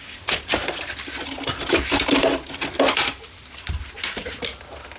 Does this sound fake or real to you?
real